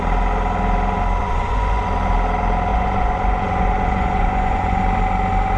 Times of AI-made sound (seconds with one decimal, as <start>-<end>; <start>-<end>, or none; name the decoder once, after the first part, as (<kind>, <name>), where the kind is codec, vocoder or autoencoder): 1.2-1.8 (vocoder, Vocos); 2.7-4.8